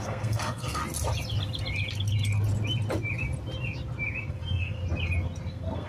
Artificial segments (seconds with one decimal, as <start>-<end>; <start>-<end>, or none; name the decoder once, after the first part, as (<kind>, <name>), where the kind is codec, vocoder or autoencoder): 0.0-0.8 (codec, SNAC); 4.3-4.8; 5.5-5.9